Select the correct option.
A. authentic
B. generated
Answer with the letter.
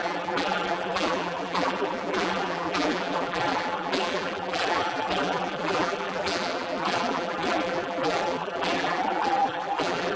B